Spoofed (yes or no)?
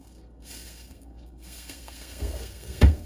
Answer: yes